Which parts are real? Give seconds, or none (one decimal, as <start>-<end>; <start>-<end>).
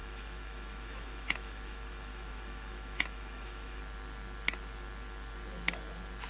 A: 3.8-6.3